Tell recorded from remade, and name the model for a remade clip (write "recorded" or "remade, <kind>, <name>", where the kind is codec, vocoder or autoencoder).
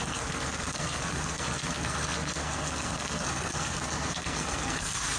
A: remade, codec, SNAC